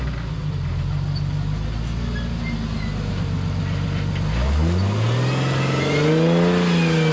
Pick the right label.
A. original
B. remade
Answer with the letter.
A